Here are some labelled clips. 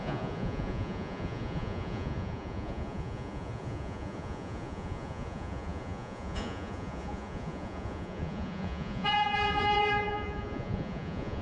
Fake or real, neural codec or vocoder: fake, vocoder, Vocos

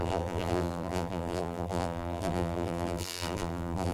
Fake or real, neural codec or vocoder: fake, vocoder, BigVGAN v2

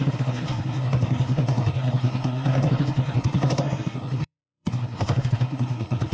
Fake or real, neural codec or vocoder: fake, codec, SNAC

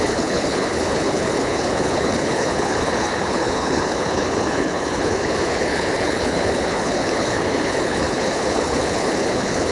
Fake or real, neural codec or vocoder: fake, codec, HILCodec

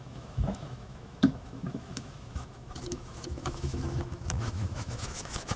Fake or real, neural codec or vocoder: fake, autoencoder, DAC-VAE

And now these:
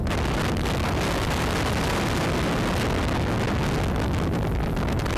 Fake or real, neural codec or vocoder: real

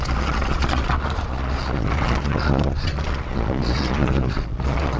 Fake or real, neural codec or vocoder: fake, vocoder, Vocos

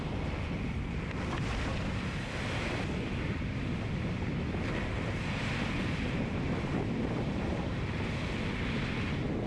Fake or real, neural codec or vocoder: real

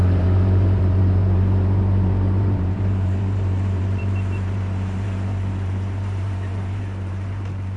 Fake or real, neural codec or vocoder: fake, vocoder, BigVGAN v2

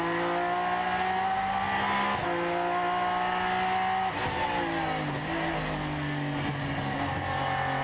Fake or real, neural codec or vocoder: real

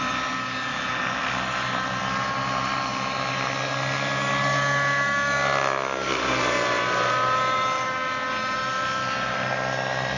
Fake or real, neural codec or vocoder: real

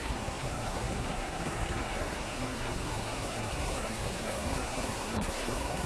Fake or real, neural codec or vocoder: fake, codec, SNAC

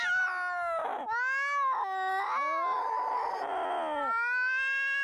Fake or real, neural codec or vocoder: real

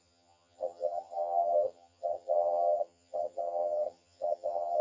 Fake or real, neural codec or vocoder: fake, vocoder, HiFi-GAN